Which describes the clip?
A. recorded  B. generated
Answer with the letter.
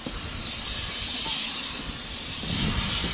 A